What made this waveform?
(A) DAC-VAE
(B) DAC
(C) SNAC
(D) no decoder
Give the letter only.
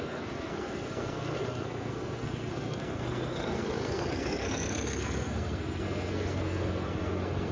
C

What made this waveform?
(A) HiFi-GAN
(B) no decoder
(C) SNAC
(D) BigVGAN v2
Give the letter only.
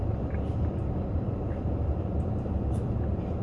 D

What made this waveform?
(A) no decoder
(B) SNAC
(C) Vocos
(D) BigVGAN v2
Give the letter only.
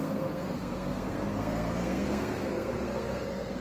B